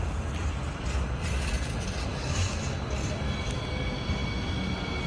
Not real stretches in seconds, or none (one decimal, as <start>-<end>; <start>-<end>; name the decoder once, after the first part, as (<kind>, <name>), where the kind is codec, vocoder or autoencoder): 2.1-2.7 (autoencoder, DAC-VAE)